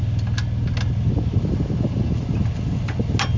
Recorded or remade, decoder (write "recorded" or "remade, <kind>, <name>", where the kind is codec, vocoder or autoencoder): recorded